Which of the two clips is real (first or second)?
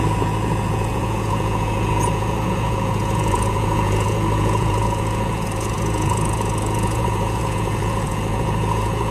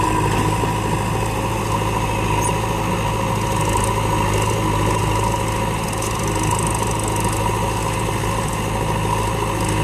second